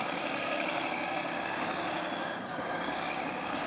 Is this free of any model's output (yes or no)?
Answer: no